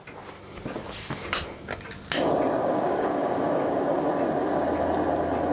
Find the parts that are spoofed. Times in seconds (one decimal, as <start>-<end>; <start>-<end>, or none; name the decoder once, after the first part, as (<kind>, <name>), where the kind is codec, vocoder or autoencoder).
2.6-4.1 (codec, DAC)